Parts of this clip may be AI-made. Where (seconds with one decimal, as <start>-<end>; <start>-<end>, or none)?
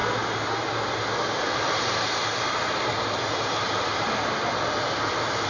none